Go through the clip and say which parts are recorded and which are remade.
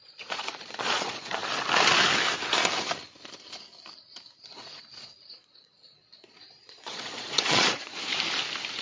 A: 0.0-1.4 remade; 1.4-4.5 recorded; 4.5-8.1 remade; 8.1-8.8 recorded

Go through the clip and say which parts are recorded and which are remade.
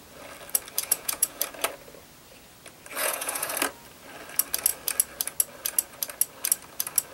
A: 0.0-0.8 recorded; 0.8-1.4 remade; 1.4-3.0 recorded; 3.0-3.5 remade; 3.5-7.1 recorded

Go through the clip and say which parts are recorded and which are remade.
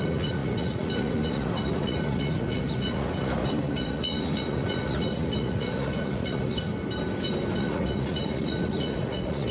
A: 0.0-6.7 remade; 6.7-7.6 recorded; 7.6-9.5 remade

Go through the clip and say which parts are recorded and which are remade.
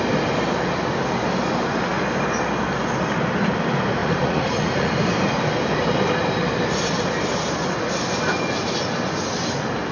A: 0.0-4.0 recorded; 4.0-4.9 remade; 4.9-9.9 recorded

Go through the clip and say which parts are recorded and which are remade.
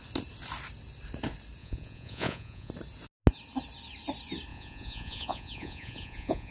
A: 0.0-1.6 recorded; 1.6-2.7 remade; 2.7-4.5 recorded; 4.5-6.5 remade